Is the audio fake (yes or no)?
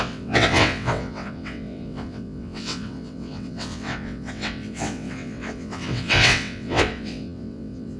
yes